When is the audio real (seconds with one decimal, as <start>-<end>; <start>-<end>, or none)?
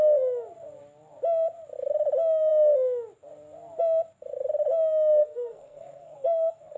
0.0-5.2